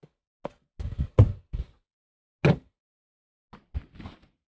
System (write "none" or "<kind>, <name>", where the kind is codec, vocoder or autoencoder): none